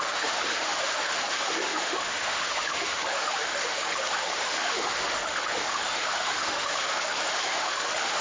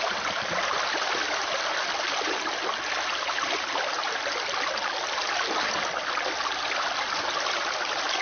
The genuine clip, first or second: second